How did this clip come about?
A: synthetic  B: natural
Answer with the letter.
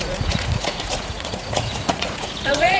A